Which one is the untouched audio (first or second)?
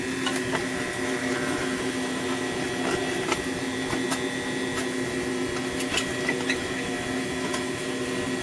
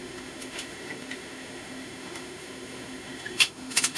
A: first